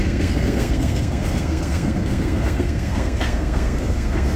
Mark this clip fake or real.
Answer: fake